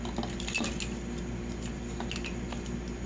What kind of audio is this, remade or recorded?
recorded